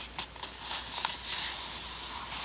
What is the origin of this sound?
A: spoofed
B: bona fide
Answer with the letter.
B